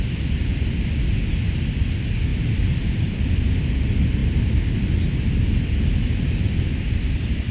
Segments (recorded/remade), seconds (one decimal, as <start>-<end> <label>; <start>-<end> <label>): 0.0-7.5 recorded